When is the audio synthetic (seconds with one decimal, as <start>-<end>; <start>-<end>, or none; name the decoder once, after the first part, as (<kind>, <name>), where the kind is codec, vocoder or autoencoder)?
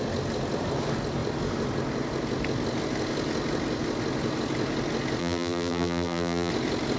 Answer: 5.2-6.5 (vocoder, BigVGAN v2)